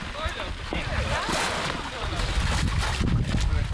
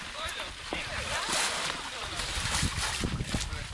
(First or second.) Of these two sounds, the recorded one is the first